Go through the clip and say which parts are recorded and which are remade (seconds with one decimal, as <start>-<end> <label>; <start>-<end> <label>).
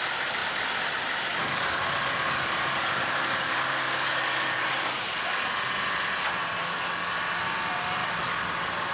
0.0-1.3 recorded; 1.3-4.9 remade; 4.9-6.6 recorded; 6.6-7.1 remade; 7.1-8.0 recorded; 8.0-8.9 remade